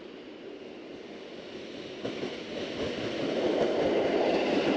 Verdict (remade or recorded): recorded